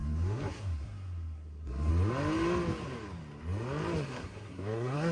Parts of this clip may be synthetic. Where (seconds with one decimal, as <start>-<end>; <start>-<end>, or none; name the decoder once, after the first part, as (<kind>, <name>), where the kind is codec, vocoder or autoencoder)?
0.0-1.9 (codec, SNAC); 4.0-5.1